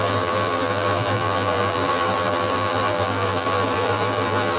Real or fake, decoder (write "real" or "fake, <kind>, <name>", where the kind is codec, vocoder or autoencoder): fake, vocoder, BigVGAN v2